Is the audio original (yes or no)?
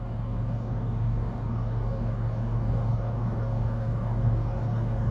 no